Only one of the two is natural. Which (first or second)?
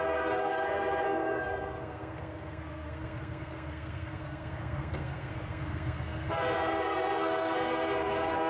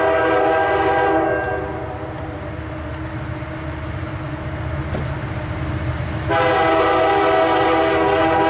second